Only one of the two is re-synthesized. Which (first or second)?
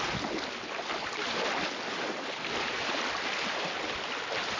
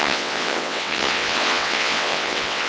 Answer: second